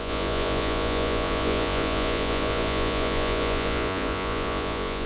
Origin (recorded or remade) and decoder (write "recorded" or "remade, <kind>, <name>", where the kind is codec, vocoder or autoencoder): remade, vocoder, Vocos